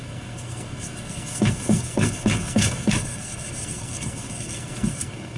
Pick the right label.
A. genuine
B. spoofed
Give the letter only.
B